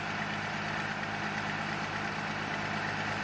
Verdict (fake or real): real